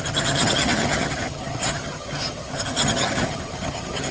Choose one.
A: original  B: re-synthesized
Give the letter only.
B